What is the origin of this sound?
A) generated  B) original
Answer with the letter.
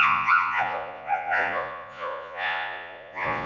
A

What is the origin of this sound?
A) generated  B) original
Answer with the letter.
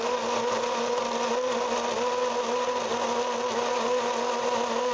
B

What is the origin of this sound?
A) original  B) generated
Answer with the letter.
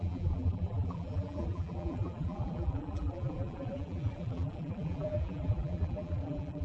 B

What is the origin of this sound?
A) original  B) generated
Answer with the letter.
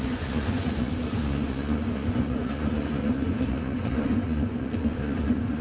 B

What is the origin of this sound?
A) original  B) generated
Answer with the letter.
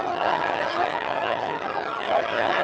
B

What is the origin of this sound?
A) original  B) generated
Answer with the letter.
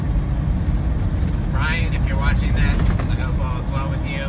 A